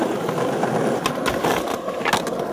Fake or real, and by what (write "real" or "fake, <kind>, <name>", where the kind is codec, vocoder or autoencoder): real